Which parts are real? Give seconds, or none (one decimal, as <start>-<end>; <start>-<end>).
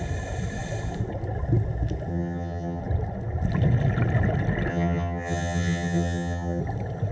0.0-2.1; 2.8-4.7; 6.6-7.1